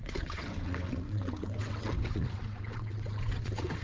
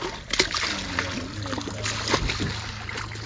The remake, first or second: first